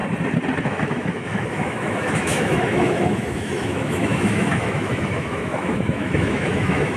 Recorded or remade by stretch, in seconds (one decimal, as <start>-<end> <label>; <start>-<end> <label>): 0.0-0.6 recorded; 0.6-7.0 remade